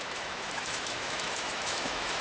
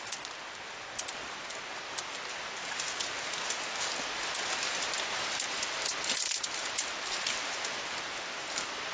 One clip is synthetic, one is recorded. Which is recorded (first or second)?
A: second